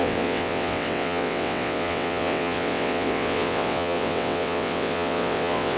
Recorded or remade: remade